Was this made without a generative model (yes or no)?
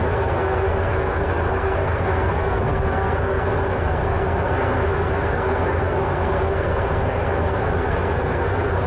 no